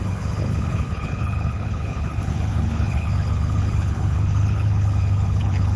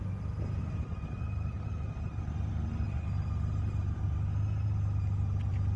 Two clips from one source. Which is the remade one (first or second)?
first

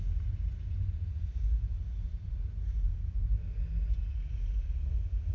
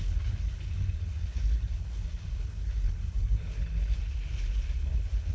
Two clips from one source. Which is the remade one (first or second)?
second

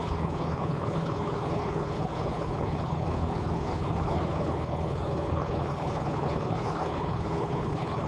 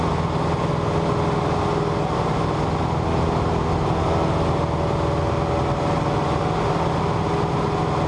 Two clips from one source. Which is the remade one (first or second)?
first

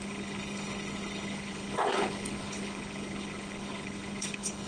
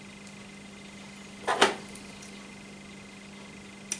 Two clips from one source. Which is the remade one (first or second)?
first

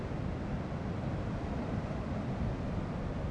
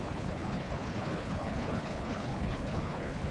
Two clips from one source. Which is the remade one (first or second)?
second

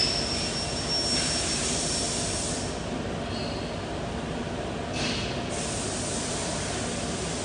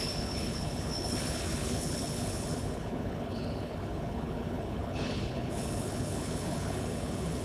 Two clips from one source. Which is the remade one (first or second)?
second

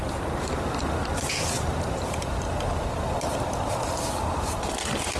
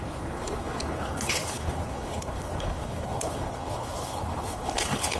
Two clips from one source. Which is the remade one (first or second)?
second